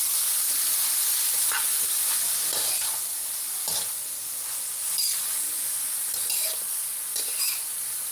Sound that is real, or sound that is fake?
real